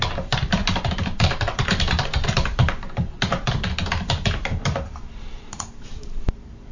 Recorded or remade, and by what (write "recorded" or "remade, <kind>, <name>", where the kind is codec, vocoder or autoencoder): remade, vocoder, BigVGAN v2